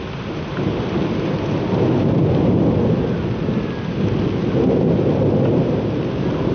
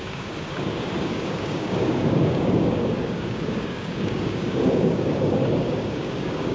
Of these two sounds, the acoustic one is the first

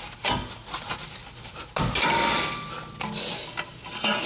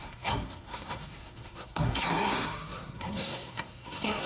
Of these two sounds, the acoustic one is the first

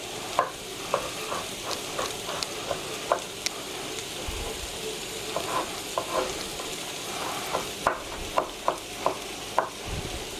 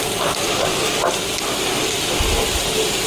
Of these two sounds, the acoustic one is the second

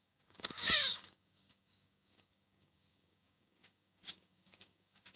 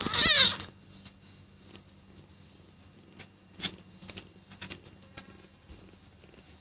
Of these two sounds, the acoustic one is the second